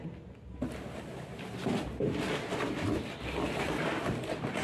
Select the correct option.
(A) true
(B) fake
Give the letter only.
A